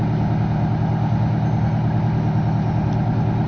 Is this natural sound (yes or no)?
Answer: yes